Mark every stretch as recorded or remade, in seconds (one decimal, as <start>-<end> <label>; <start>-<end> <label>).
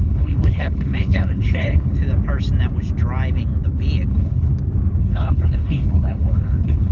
0.0-2.0 remade; 2.0-4.1 recorded; 4.1-4.5 remade; 4.5-5.0 recorded; 5.0-6.9 remade